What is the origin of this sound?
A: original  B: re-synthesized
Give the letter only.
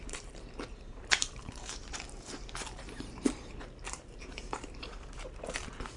B